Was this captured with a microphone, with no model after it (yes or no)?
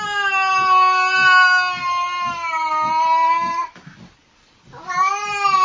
yes